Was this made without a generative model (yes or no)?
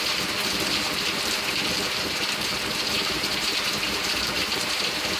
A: no